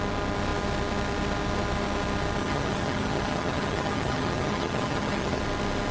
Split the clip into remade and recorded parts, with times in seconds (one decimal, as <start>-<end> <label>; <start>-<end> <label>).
0.0-2.4 recorded; 2.4-5.4 remade; 5.4-5.9 recorded